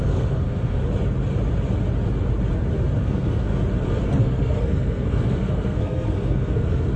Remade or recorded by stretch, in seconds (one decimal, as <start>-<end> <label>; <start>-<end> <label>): 0.0-0.8 remade; 0.8-3.0 recorded; 3.0-3.5 remade; 3.5-4.2 recorded; 4.2-7.0 remade